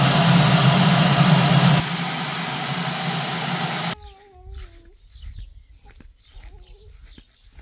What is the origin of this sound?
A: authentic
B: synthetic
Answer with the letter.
A